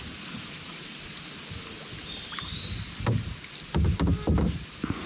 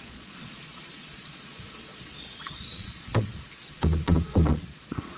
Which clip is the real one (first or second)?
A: first